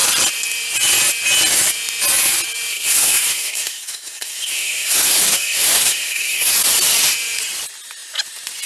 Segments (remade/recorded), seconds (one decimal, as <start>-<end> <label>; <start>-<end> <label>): 0.0-2.7 recorded; 2.7-6.5 remade; 6.5-8.7 recorded